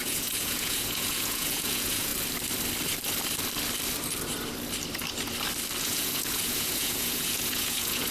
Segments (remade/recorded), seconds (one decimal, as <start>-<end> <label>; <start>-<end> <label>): 0.0-2.1 remade; 2.1-5.8 recorded; 5.8-8.1 remade